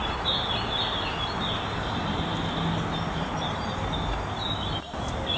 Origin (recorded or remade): recorded